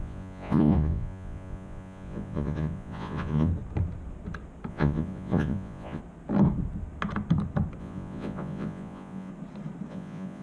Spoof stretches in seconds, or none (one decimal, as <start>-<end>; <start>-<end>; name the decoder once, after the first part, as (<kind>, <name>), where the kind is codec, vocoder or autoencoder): 0.0-3.5 (vocoder, Vocos); 4.7-6.0; 7.8-9.3; 9.9-10.4